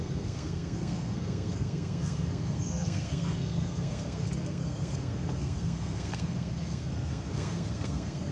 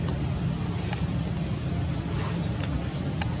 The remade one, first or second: first